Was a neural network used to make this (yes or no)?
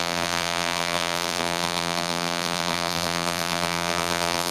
yes